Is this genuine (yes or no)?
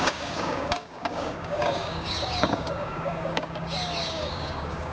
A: no